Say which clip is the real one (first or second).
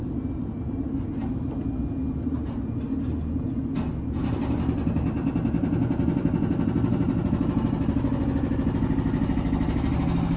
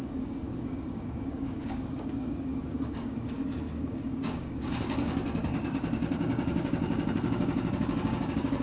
first